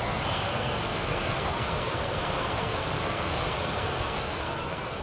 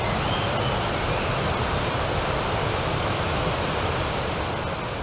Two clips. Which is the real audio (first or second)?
second